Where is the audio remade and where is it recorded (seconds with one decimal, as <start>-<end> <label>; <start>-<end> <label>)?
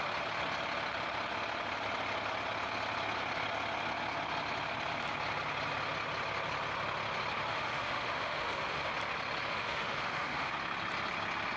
0.0-7.5 recorded; 7.5-8.9 remade; 8.9-9.5 recorded; 9.5-10.5 remade; 10.5-11.6 recorded